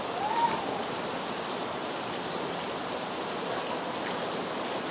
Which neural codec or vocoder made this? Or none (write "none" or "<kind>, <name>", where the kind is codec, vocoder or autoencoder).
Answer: none